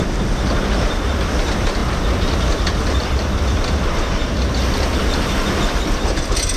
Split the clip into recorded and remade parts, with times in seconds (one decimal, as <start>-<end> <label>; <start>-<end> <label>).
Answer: 0.0-6.6 recorded